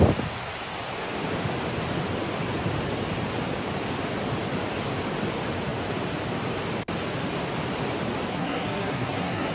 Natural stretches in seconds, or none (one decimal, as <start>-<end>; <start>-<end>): 0.0-8.3